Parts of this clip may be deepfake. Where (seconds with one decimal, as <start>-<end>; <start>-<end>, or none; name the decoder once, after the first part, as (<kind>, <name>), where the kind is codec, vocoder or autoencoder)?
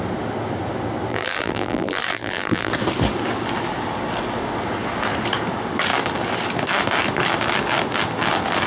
1.1-2.7 (vocoder, BigVGAN v2)